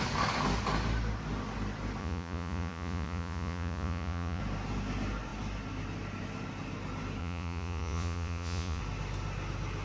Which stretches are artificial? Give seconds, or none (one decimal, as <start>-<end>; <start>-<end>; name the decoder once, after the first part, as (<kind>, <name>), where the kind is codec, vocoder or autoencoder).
2.0-4.4 (vocoder, Vocos); 7.2-8.8